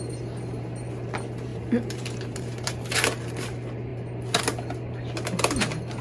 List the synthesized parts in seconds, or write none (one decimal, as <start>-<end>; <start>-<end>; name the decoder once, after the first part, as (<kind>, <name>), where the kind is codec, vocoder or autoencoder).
1.5-2.7 (vocoder, BigVGAN v2)